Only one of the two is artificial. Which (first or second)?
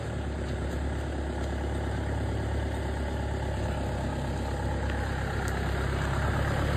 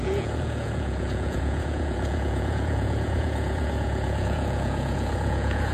second